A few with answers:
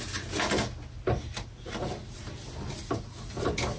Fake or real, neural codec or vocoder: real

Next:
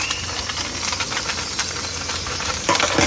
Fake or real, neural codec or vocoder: real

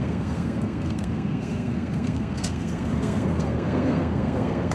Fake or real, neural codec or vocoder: fake, codec, SNAC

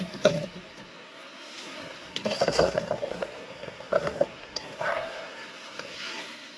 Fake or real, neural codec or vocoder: fake, codec, SNAC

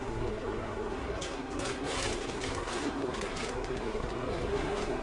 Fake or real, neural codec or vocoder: fake, codec, SNAC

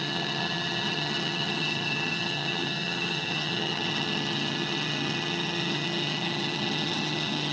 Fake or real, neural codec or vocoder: fake, vocoder, HiFi-GAN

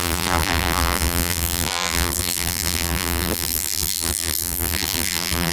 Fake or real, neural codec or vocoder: fake, vocoder, BigVGAN v2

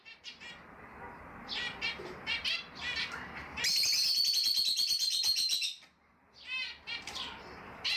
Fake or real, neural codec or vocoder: fake, vocoder, BigVGAN v2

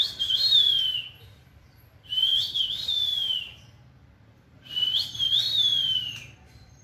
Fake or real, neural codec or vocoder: fake, vocoder, BigVGAN v2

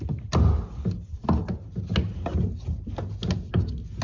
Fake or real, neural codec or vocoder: real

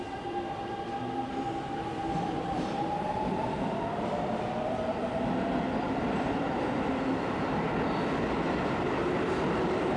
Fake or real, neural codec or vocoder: fake, vocoder, BigVGAN v2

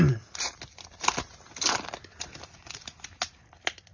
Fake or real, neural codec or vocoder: real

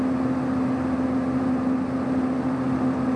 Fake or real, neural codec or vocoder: real